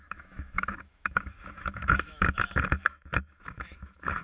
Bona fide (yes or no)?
no